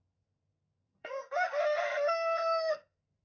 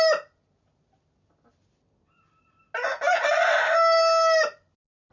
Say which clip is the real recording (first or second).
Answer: second